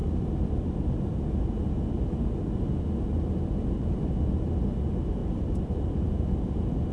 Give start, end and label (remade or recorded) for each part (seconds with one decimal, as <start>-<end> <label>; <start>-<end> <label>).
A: 0.0-1.3 remade; 1.3-5.2 recorded; 5.2-6.1 remade; 6.1-6.9 recorded